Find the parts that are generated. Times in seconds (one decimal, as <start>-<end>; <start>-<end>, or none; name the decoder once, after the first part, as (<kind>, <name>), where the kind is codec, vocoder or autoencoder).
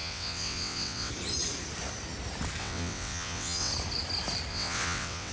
0.0-1.1 (vocoder, WaveNeXt); 2.6-3.7; 4.5-5.3